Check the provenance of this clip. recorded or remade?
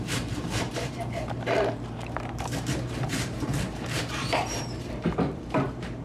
remade